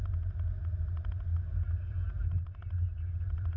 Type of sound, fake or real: real